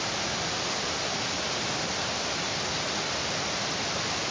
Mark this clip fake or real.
real